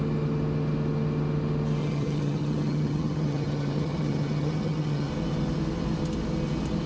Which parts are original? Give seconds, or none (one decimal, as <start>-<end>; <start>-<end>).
0.0-1.8; 5.1-6.9